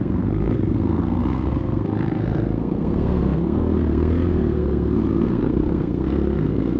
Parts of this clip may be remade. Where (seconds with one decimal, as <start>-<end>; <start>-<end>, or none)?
0.0-6.8